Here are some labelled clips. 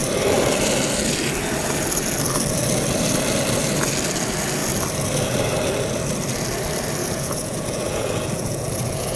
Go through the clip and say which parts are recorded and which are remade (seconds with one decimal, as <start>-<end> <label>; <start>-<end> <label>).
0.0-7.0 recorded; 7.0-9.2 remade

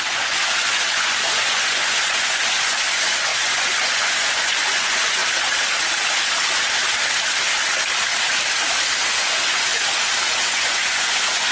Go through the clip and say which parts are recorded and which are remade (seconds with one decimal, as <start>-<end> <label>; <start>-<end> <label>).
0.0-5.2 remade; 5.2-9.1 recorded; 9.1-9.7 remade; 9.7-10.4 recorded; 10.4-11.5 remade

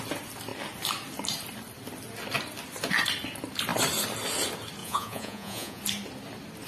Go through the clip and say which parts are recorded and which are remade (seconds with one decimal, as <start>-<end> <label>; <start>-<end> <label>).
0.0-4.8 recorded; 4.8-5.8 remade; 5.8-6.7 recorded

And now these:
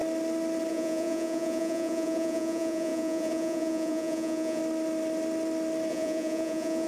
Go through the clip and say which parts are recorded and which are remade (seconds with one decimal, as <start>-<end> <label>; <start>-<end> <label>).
0.0-0.7 recorded; 0.7-4.6 remade; 4.6-5.9 recorded; 5.9-6.9 remade